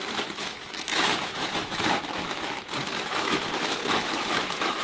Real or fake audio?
fake